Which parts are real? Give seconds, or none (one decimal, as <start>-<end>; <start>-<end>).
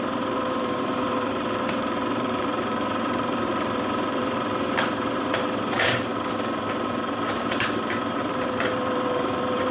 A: 6.1-6.7